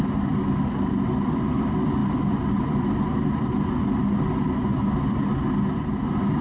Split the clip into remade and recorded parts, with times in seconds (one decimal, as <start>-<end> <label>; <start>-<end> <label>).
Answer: 0.0-6.4 recorded